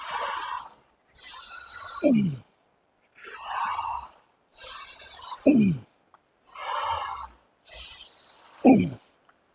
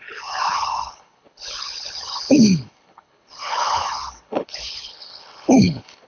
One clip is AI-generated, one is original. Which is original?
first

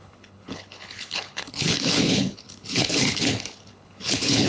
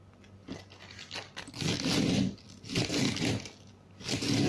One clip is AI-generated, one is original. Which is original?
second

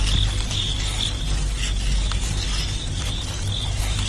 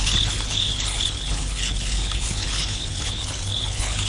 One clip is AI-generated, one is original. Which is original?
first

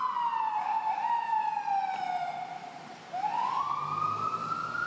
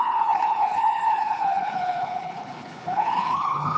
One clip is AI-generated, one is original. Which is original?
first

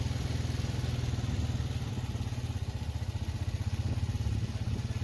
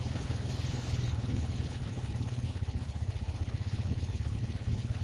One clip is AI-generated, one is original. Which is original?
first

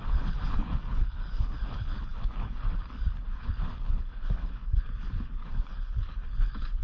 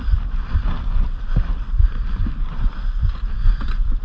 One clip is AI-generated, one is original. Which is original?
second